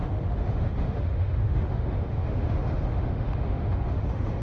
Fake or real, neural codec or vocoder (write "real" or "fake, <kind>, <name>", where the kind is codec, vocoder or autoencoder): fake, autoencoder, DAC-VAE